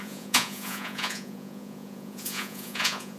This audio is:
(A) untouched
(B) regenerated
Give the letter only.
B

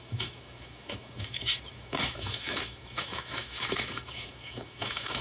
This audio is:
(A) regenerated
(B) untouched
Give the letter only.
A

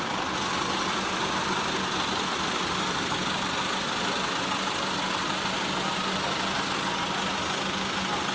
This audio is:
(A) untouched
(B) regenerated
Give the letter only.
A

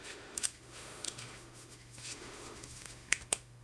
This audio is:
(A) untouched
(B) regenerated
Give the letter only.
B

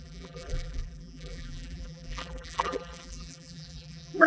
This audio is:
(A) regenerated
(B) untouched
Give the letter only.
A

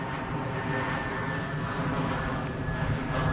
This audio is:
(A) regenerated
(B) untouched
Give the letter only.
B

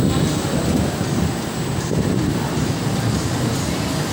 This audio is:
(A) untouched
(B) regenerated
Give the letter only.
A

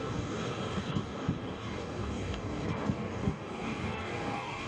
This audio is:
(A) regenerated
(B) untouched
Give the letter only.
A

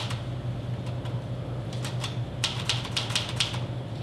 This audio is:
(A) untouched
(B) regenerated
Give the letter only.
A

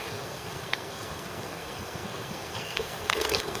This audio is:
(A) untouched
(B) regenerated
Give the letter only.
B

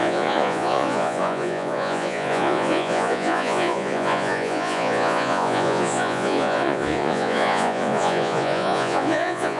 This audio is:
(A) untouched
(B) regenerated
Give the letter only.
B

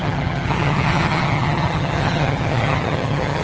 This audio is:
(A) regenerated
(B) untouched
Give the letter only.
A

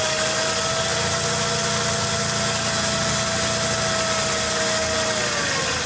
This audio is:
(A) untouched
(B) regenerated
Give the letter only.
A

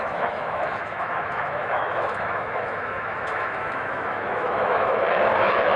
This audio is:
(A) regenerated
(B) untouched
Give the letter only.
A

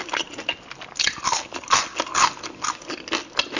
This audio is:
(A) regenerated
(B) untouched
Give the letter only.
B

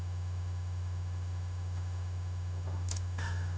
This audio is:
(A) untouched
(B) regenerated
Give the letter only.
B